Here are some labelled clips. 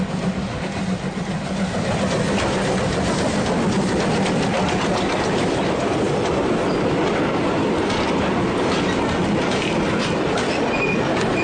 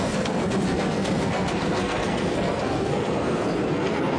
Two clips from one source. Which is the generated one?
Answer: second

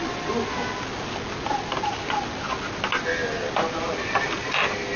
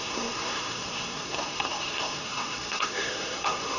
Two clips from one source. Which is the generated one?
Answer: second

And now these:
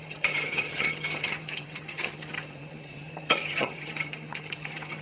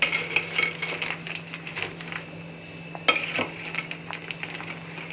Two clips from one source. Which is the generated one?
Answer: first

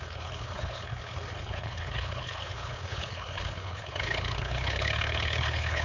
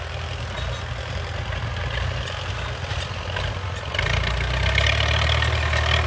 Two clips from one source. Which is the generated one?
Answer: first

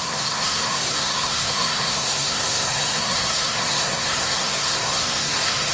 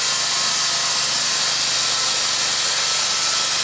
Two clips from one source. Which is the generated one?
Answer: first